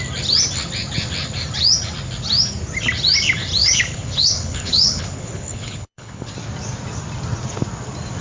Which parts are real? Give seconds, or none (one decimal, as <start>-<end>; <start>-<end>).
0.0-3.6; 6.3-8.2